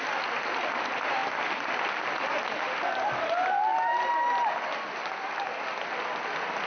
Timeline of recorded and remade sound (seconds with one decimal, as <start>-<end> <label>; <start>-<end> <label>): 0.0-6.7 recorded